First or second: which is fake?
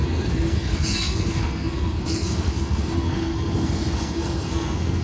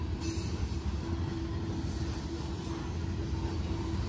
first